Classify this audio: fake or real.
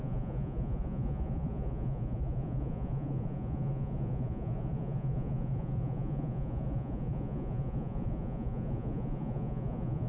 fake